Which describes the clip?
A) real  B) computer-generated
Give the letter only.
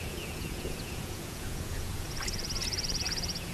B